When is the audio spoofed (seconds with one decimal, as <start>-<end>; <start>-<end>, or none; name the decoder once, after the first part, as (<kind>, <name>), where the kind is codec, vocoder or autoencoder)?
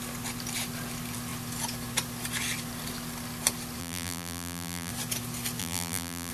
3.8-4.9 (vocoder, BigVGAN v2); 5.6-6.3